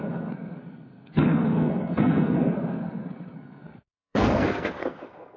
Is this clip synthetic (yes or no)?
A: yes